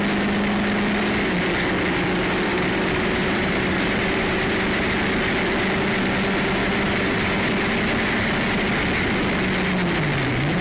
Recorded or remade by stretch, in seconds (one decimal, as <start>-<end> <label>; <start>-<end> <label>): 0.0-2.5 recorded; 2.5-4.4 remade; 4.4-6.6 recorded; 6.6-7.3 remade; 7.3-10.6 recorded